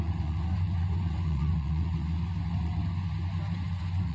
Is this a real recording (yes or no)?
no